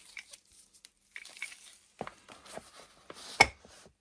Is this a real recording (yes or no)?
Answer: yes